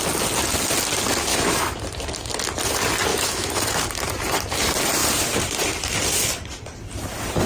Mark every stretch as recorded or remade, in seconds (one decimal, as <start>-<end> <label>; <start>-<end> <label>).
0.0-1.3 recorded; 1.3-1.8 remade; 1.8-3.1 recorded; 3.1-3.8 remade; 3.8-7.5 recorded